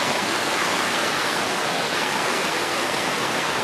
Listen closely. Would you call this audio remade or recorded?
remade